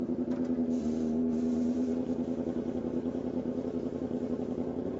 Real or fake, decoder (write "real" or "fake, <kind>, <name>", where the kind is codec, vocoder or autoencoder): fake, vocoder, BigVGAN v2